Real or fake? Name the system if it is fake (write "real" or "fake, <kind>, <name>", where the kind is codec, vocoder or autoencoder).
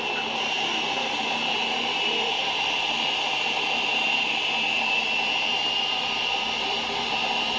fake, vocoder, BigVGAN v2